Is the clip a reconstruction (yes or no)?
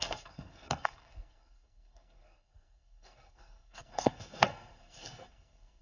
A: yes